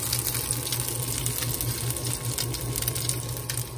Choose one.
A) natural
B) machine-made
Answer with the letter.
A